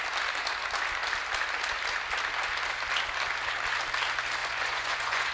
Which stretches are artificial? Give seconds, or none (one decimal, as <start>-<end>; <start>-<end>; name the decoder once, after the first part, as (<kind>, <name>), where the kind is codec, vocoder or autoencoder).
4.4-5.3 (vocoder, Vocos)